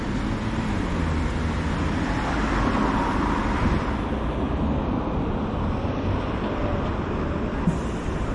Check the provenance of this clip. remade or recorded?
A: recorded